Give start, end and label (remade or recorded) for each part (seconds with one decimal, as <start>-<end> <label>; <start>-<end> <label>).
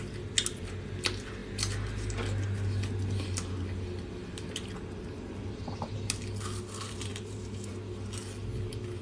0.0-7.1 recorded; 7.1-7.7 remade; 7.7-9.0 recorded